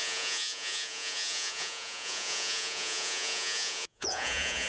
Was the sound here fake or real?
fake